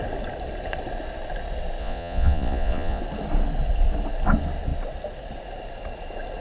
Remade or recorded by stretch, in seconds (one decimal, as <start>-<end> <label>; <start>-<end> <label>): 0.0-1.8 recorded; 1.8-3.0 remade; 3.0-6.4 recorded